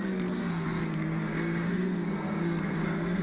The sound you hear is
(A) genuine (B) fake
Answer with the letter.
B